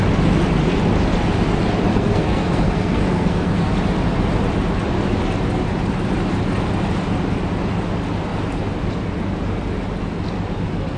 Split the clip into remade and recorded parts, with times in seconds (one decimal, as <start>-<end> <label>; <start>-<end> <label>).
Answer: 0.0-1.9 recorded; 1.9-3.7 remade; 3.7-11.0 recorded

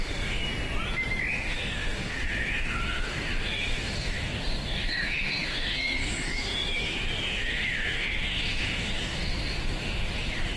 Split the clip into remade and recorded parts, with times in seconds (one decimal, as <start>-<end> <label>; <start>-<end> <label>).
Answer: 0.0-0.4 remade; 0.4-1.3 recorded; 1.3-10.6 remade

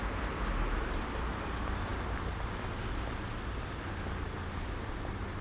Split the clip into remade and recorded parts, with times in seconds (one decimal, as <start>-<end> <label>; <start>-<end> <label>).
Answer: 0.0-5.4 recorded